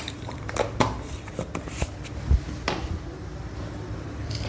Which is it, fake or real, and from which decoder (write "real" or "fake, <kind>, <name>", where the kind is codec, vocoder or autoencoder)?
real